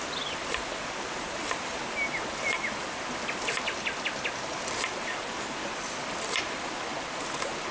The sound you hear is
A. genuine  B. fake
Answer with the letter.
A